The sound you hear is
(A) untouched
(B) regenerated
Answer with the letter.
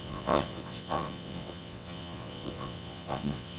B